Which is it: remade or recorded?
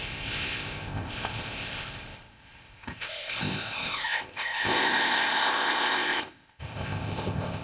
remade